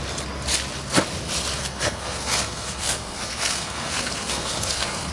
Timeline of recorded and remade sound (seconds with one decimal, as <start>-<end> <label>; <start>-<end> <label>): 0.0-1.6 recorded; 1.6-5.1 remade

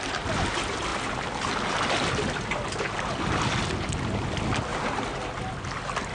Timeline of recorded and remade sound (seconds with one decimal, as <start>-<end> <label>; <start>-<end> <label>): 0.0-6.1 recorded

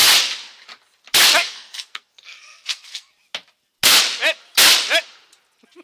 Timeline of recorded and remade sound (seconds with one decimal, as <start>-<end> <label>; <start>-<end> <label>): 0.0-1.4 recorded; 1.4-3.1 remade; 3.1-5.8 recorded

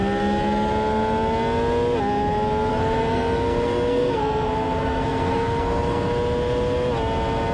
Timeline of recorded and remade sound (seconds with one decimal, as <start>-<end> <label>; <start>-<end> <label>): 0.0-2.7 recorded; 2.7-6.1 remade; 6.1-7.5 recorded

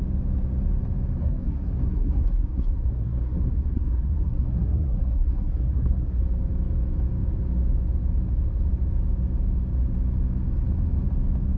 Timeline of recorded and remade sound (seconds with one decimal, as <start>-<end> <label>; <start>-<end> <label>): 0.0-1.2 recorded; 1.2-6.2 remade; 6.2-11.6 recorded

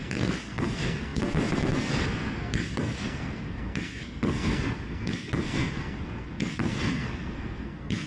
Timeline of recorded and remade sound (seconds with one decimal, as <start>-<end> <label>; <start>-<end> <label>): 0.0-8.1 remade